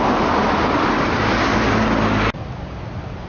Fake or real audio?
real